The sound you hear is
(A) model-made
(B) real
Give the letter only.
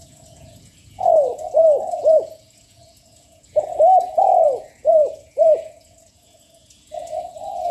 A